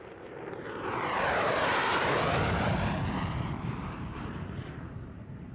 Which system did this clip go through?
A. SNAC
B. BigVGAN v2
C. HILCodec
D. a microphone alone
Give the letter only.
B